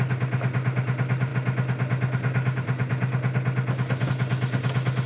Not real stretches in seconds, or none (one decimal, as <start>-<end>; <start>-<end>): none